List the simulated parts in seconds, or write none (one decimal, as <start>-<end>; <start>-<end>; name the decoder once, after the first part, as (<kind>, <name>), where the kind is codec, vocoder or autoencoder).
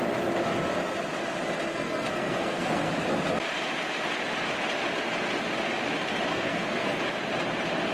1.7-2.9 (codec, SNAC); 6.3-7.0